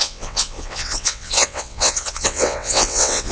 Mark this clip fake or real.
fake